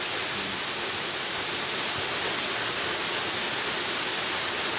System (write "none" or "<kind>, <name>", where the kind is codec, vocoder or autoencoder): none